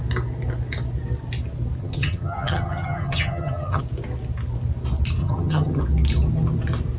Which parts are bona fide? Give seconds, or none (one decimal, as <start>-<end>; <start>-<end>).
0.0-1.8; 3.8-5.2; 5.8-7.0